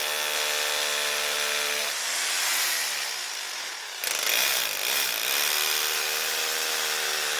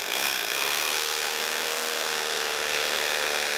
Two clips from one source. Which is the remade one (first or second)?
second